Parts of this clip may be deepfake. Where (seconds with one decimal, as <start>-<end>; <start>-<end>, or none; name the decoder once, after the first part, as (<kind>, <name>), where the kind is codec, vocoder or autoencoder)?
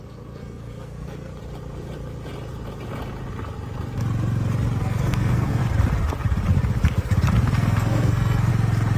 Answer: 0.0-1.3 (codec, SNAC); 4.8-5.6; 7.3-8.5